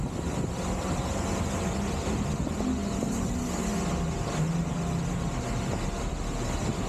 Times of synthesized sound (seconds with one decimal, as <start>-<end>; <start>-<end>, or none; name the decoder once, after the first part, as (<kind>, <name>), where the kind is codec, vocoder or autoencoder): none